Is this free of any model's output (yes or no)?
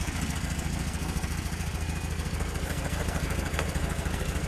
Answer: no